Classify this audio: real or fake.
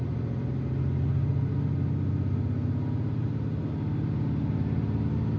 real